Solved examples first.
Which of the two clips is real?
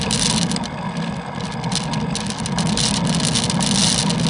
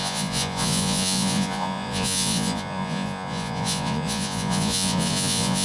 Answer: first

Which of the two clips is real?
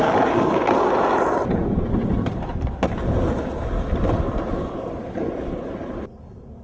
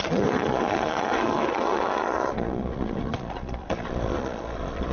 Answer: first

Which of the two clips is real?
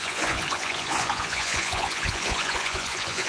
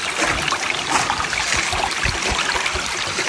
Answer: second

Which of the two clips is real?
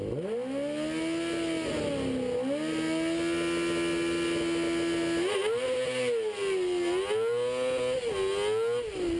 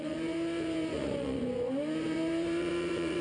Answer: first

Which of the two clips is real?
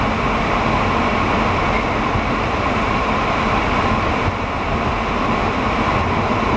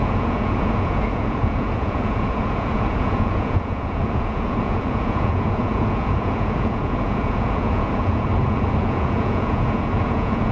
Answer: first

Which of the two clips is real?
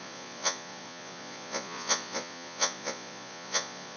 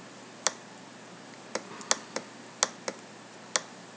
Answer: second